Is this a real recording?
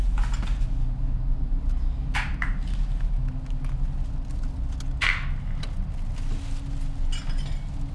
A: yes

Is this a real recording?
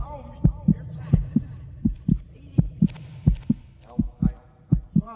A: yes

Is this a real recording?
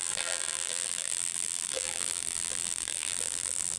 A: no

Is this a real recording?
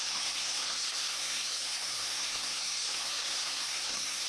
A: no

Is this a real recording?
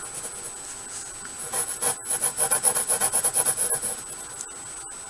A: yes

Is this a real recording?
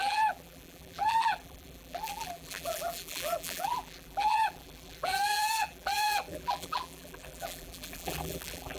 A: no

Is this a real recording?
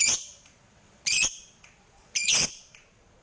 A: no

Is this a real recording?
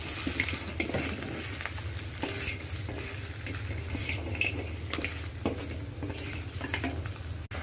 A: yes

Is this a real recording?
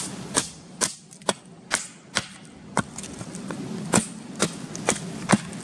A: yes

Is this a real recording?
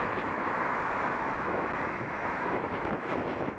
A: no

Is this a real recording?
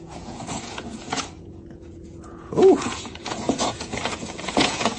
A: no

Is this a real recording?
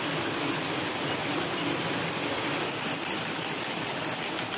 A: yes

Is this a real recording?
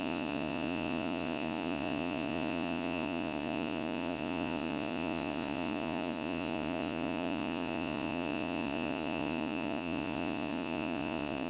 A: no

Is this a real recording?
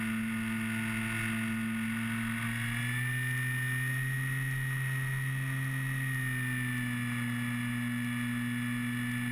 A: yes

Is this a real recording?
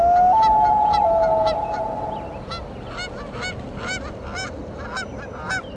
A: yes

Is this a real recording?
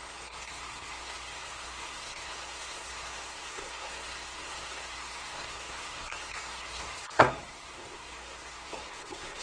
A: no